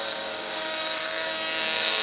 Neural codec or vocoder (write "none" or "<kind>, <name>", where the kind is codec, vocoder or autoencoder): codec, DAC